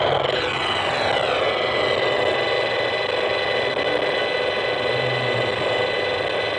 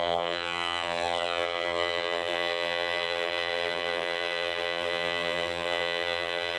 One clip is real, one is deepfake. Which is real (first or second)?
first